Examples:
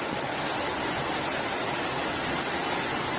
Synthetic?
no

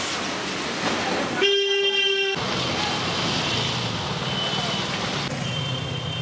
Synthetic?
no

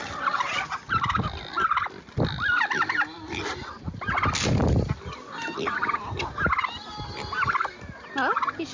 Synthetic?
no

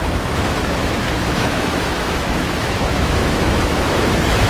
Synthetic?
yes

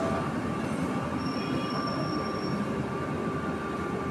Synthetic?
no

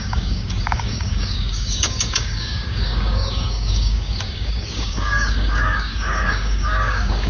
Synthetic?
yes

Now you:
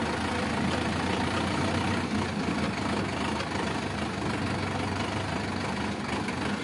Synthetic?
no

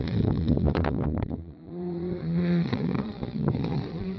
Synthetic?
yes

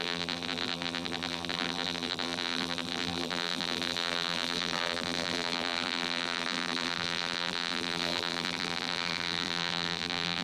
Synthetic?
yes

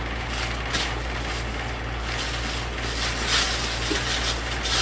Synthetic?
no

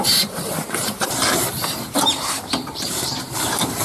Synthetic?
yes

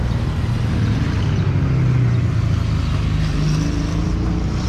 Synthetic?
no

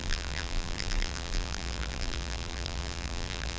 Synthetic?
yes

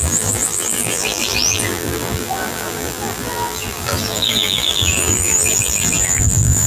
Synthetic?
yes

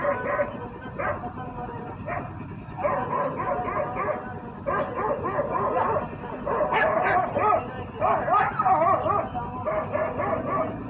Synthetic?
no